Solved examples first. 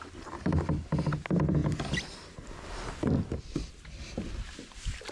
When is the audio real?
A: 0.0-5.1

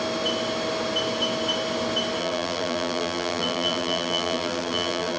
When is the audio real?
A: 0.0-2.2

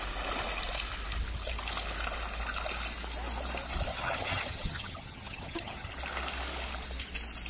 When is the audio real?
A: 0.0-3.9; 5.9-7.5

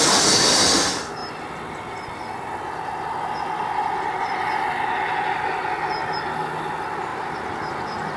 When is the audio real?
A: 0.0-8.2

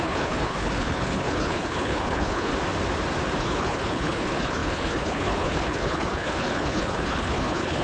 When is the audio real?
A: 2.5-3.4

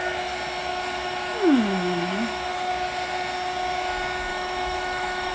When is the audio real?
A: 0.0-0.7; 2.7-4.3

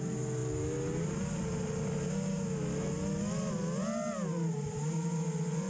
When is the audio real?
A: 0.0-5.7

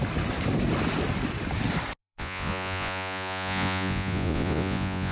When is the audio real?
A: 0.0-2.0